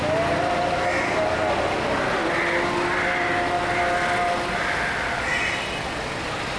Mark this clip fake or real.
real